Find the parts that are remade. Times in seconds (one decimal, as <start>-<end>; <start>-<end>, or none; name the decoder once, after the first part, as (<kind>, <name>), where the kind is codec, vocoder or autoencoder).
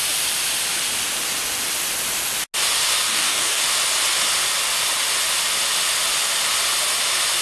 3.1-3.6 (codec, DAC)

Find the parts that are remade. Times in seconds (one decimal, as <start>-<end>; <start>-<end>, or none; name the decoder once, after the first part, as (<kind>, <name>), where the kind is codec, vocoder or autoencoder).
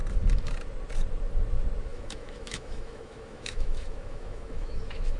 1.9-5.2 (autoencoder, DAC-VAE)